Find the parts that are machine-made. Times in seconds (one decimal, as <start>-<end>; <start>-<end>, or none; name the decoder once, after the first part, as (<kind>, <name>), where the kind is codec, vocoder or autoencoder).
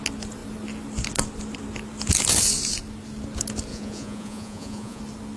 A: 3.7-5.0 (vocoder, Vocos)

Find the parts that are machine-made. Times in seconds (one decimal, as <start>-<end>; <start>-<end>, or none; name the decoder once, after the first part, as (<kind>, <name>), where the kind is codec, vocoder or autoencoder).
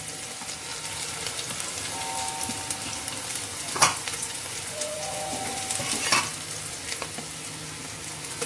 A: 3.5-5.6 (vocoder, Vocos)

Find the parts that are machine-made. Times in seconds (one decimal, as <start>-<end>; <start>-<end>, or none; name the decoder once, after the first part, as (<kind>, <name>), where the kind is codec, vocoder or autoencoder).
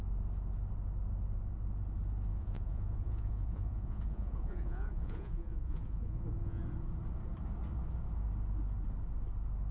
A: 2.3-6.6 (vocoder, Vocos)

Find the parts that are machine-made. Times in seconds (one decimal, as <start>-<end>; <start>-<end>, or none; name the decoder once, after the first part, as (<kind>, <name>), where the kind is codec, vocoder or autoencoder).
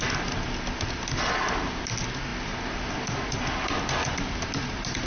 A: none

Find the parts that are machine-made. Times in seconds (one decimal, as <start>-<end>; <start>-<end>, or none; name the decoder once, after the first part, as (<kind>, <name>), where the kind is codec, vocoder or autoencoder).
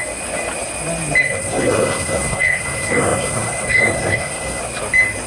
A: 1.2-4.6 (codec, SNAC)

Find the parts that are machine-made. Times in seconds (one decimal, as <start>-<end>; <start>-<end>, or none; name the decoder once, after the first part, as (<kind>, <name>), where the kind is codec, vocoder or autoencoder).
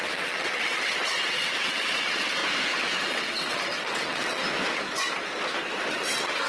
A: 0.0-2.4 (vocoder, WaveNeXt); 3.1-4.4; 5.9-6.5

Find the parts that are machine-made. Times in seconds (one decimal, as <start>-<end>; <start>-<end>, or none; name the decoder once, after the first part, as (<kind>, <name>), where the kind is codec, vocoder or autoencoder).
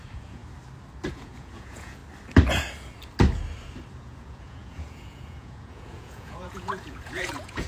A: 0.0-0.4 (vocoder, Vocos); 1.1-2.0; 3.9-7.7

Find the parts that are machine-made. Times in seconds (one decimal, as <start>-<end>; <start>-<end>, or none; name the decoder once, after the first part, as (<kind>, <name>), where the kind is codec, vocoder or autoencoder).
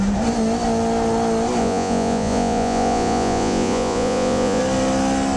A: 1.6-4.6 (vocoder, Vocos)